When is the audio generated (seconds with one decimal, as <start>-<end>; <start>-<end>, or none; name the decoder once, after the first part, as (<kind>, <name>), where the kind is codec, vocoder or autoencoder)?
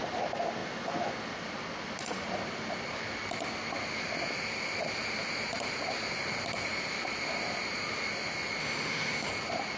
8.6-9.3 (autoencoder, DAC-VAE)